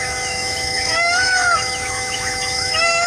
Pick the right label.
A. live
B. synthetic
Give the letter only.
B